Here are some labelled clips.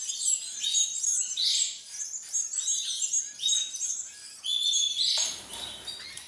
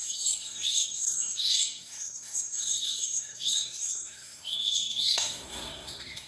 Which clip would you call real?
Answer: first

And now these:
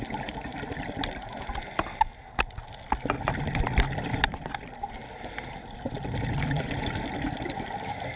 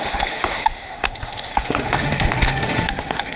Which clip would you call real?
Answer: first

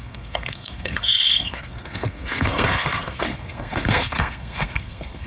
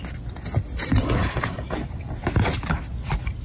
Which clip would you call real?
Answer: second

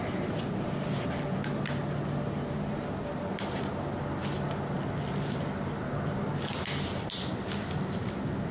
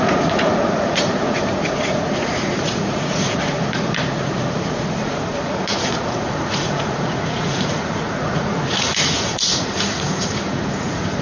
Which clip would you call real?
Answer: first